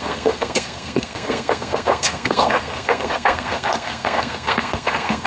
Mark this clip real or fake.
fake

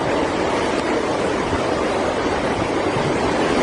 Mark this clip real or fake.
real